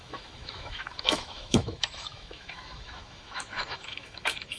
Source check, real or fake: fake